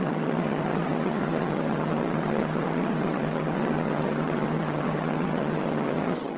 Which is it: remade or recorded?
remade